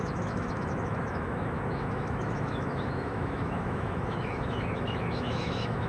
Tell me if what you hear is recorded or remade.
remade